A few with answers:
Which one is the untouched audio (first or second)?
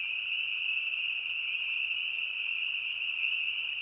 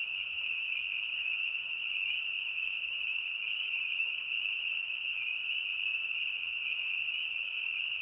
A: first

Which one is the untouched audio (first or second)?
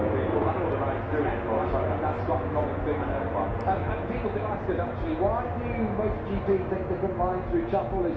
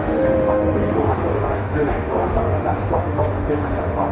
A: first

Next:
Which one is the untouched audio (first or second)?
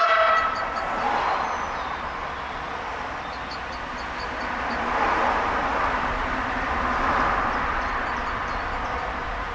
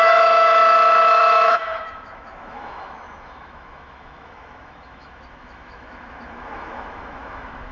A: first